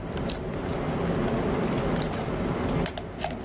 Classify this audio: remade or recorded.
remade